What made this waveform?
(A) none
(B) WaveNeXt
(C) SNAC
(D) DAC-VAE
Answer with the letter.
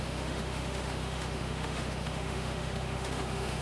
D